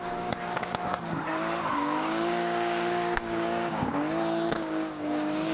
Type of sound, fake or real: fake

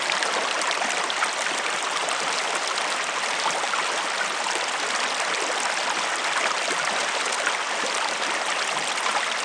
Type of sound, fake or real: real